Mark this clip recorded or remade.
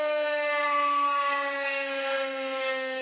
remade